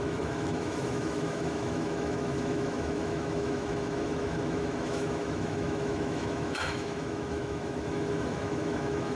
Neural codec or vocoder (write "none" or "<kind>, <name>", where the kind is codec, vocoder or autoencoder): autoencoder, DAC-VAE